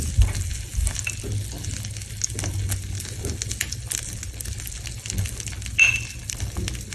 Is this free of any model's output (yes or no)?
yes